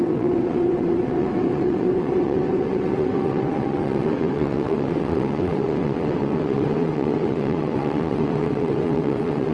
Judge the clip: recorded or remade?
remade